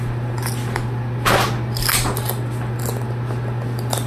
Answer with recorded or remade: recorded